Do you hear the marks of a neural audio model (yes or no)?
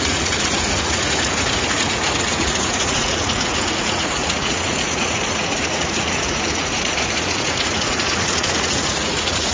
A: yes